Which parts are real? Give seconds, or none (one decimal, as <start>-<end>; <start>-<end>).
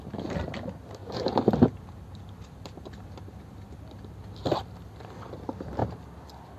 0.0-1.0; 5.0-6.6